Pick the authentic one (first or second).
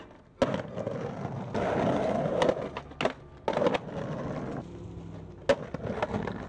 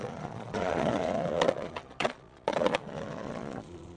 first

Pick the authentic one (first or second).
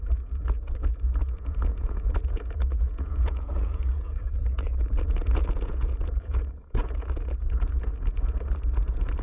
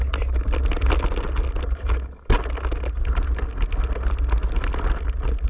second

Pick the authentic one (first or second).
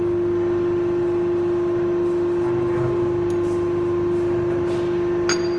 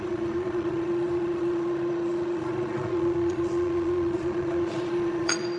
first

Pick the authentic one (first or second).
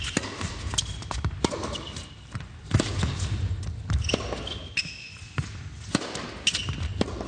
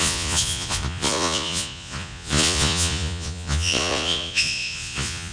first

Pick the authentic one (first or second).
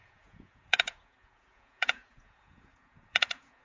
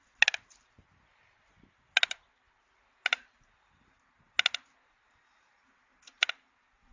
second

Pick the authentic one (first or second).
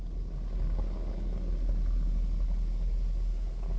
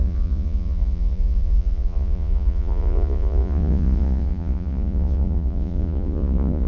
first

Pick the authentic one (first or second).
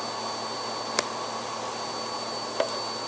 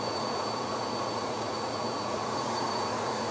first